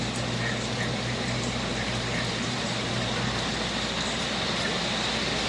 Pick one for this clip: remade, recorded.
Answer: recorded